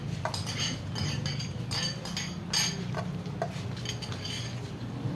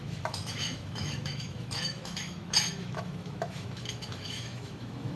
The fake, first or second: second